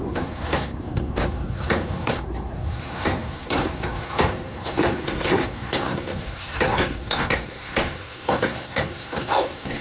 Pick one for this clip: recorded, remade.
remade